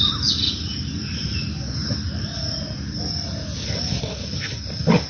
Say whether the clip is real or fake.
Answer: real